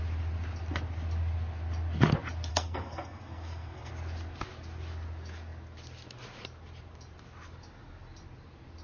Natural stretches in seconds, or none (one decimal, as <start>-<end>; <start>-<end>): 0.0-2.5; 3.9-8.8